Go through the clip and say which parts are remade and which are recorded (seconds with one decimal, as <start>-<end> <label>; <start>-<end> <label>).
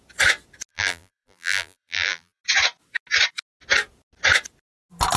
0.0-0.7 recorded; 0.7-2.4 remade; 2.4-5.2 recorded